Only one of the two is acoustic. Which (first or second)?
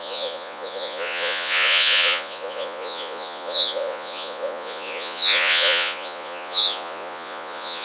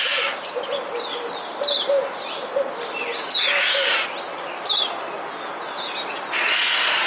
second